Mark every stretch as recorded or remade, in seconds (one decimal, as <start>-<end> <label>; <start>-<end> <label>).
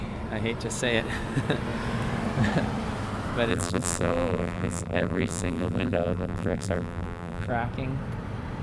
0.0-3.5 recorded; 3.5-7.5 remade; 7.5-8.6 recorded